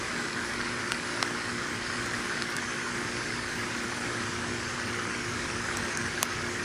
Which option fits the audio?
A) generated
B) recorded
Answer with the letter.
A